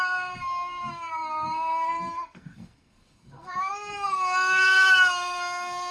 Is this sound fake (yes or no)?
yes